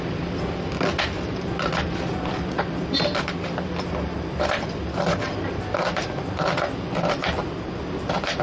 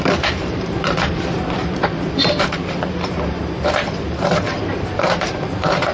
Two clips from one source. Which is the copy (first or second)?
second